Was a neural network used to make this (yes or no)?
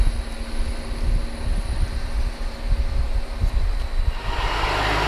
no